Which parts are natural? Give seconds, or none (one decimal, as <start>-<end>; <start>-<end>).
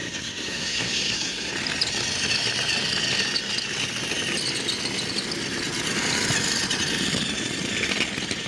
1.5-8.5